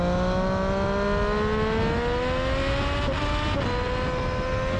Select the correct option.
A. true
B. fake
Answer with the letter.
A